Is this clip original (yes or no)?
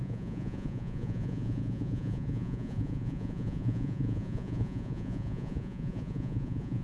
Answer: no